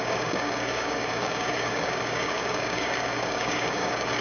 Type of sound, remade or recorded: remade